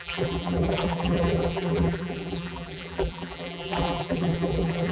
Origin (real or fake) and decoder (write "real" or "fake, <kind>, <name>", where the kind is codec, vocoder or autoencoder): fake, vocoder, BigVGAN v2